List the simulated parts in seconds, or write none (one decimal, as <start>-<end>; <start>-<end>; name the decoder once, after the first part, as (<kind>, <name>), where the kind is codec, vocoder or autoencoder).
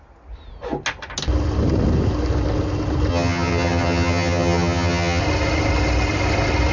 3.1-5.2 (vocoder, HiFi-GAN)